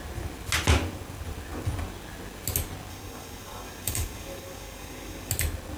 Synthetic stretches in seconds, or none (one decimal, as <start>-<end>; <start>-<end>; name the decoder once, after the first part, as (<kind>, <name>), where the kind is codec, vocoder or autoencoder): 2.9-5.3 (codec, DAC)